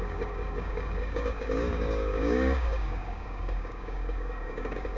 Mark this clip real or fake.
fake